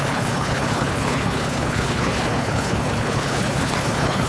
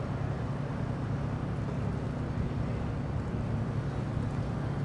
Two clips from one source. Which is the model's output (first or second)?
first